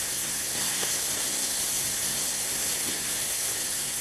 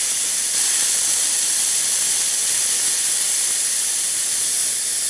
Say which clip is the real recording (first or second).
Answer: second